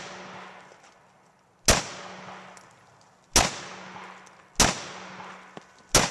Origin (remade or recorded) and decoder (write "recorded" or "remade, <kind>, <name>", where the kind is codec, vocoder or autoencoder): recorded